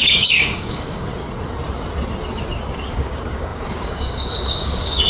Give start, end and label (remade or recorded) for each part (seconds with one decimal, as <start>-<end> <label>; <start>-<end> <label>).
0.0-1.1 remade; 1.1-2.8 recorded; 2.8-5.1 remade